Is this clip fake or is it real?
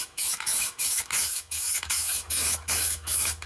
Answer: fake